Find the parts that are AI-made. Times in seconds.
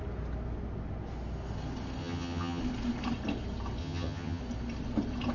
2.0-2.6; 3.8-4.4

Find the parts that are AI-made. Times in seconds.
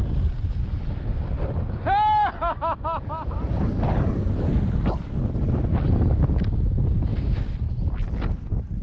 none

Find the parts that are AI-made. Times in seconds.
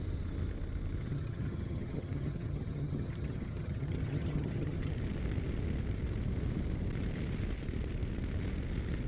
1.0-4.9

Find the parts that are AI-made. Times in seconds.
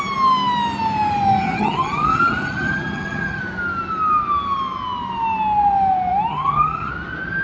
1.4-3.4; 6.3-6.9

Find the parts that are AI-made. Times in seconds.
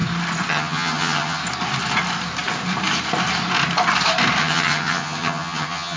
0.5-1.4; 4.4-6.0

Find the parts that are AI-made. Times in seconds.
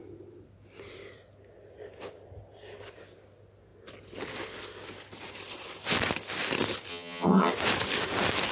6.9-7.5